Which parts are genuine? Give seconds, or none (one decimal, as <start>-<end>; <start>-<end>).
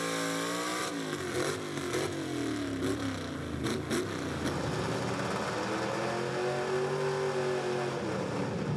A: 0.0-8.8